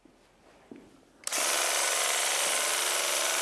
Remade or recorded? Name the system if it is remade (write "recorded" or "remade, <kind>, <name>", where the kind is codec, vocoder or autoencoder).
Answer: recorded